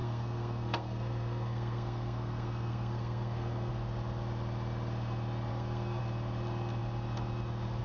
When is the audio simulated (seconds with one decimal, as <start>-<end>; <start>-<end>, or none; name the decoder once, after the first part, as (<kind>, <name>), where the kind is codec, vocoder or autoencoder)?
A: 0.0-3.7 (codec, SNAC); 5.5-6.0